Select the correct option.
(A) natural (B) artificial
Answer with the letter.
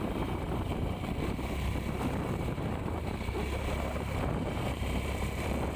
B